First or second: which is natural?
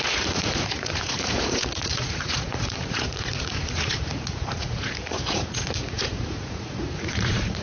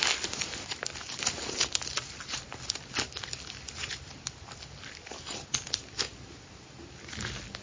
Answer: second